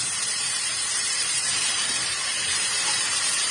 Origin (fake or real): fake